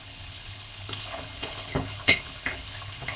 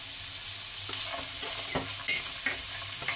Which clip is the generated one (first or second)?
first